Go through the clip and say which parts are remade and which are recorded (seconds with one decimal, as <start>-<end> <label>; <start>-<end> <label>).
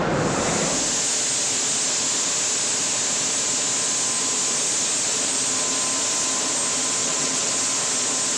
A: 0.0-7.0 recorded; 7.0-7.5 remade; 7.5-8.4 recorded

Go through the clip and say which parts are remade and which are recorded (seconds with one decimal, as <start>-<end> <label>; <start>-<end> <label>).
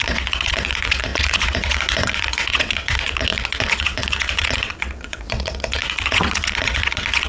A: 0.0-7.3 remade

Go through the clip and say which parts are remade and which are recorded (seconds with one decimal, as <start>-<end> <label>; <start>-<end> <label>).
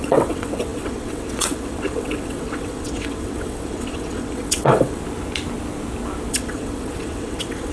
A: 0.0-5.0 remade; 5.0-6.3 recorded; 6.3-7.7 remade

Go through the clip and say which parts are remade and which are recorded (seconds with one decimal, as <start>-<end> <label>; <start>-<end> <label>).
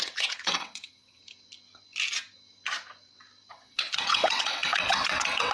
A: 0.0-1.2 remade; 1.2-3.5 recorded; 3.5-5.5 remade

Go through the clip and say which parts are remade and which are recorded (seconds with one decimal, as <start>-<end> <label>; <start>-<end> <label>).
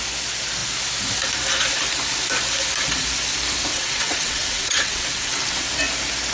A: 0.0-3.7 recorded; 3.7-5.8 remade; 5.8-6.3 recorded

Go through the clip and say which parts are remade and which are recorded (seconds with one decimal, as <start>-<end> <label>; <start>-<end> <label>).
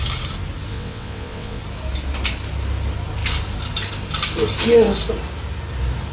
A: 0.0-0.7 recorded; 0.7-1.6 remade; 1.6-6.1 recorded